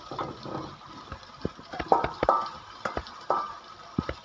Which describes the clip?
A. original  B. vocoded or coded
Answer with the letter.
B